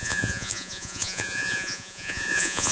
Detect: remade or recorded remade